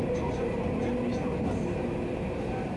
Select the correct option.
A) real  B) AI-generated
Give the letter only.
A